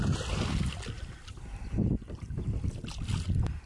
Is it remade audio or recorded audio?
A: recorded